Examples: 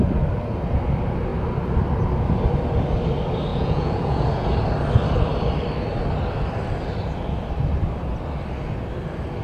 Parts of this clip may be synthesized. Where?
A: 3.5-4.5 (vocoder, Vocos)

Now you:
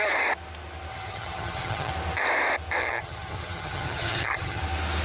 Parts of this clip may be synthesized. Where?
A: 0.9-1.9 (vocoder, HiFi-GAN); 2.8-4.6

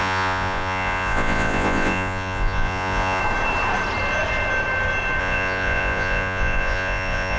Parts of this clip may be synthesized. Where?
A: 0.0-3.2 (vocoder, Vocos); 5.2-7.4

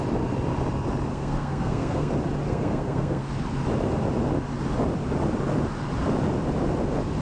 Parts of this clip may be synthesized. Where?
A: 1.1-2.1 (codec, SNAC); 2.5-3.3

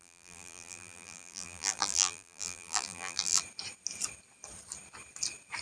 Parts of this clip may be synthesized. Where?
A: 0.0-3.4 (vocoder, BigVGAN v2)